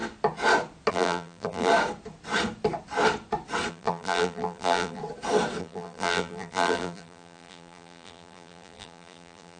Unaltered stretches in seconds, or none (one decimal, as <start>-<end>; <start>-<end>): 0.0-0.9; 1.7-3.7; 5.0-5.6